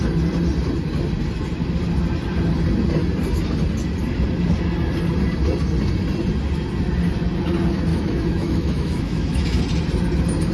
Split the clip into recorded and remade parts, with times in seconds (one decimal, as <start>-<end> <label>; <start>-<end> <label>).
0.0-7.9 recorded; 7.9-9.6 remade; 9.6-10.5 recorded